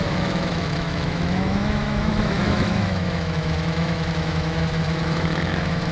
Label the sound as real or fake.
fake